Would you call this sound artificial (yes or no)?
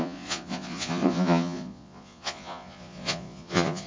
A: yes